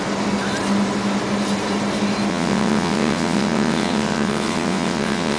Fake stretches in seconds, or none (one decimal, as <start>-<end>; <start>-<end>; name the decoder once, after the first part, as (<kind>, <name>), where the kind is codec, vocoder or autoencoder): 2.3-5.4 (vocoder, WaveNeXt)